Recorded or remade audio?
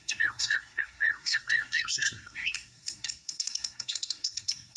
remade